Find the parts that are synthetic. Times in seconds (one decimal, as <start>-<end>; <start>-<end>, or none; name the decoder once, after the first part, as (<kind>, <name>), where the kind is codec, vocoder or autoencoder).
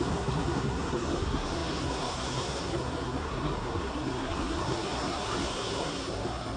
0.0-6.6 (codec, SNAC)